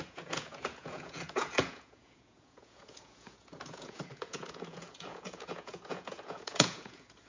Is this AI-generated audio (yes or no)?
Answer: yes